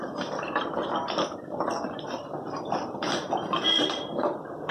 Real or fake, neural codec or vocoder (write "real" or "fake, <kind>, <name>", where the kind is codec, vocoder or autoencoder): fake, vocoder, BigVGAN v2